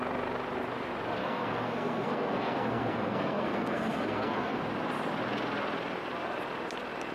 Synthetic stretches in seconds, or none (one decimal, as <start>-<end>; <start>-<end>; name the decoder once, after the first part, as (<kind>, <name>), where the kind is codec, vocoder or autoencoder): 1.2-4.6 (codec, SNAC)